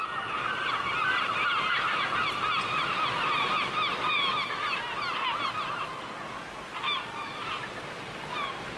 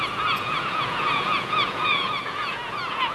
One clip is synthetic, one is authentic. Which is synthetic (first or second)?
second